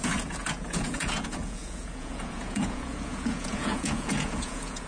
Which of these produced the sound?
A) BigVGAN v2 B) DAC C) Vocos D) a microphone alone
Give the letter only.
C